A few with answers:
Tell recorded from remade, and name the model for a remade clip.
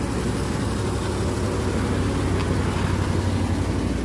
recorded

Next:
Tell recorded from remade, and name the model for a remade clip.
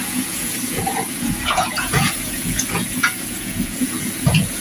remade, vocoder, Vocos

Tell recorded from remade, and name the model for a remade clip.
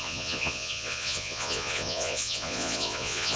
remade, vocoder, Vocos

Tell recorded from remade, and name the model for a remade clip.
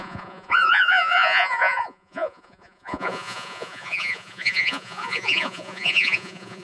remade, vocoder, Vocos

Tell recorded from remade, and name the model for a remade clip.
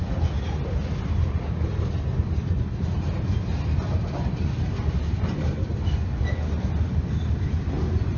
recorded